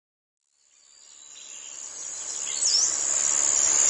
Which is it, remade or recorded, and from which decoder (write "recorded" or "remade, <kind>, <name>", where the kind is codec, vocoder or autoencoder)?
recorded